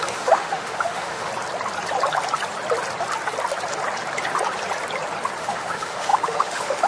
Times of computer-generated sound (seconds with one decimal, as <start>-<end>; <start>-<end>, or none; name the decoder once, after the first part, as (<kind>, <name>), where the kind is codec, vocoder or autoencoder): 0.0-1.3 (autoencoder, DAC-VAE); 5.4-6.9